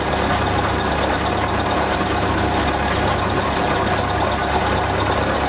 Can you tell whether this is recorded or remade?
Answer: recorded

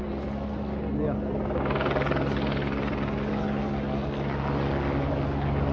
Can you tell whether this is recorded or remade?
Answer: recorded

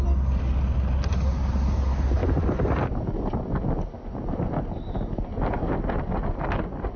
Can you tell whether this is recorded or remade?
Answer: recorded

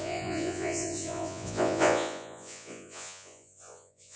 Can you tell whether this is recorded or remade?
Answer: remade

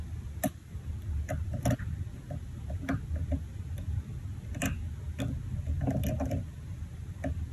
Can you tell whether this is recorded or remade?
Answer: recorded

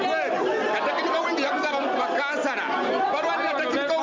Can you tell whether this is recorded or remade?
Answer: recorded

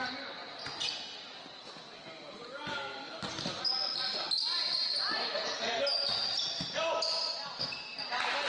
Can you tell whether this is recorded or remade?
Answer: recorded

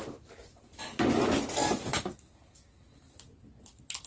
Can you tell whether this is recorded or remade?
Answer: recorded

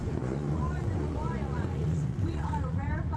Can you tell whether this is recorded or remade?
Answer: remade